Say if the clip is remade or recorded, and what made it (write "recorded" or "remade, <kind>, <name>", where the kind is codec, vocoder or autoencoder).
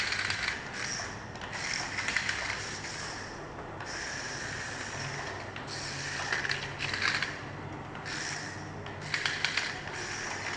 recorded